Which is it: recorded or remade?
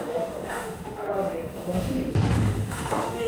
remade